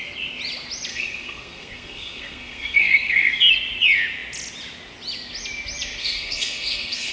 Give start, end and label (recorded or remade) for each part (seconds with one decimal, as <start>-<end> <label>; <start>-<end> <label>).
0.0-0.9 recorded; 0.9-3.4 remade; 3.4-6.0 recorded; 6.0-7.1 remade